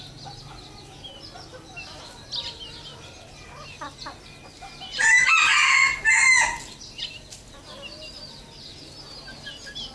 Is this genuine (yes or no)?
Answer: yes